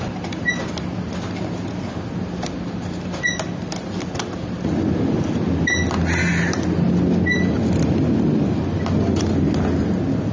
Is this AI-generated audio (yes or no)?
no